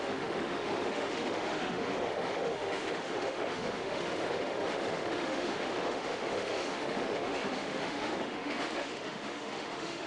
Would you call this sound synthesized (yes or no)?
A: yes